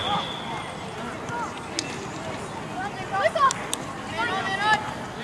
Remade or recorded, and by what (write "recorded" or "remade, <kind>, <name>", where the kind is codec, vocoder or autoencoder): recorded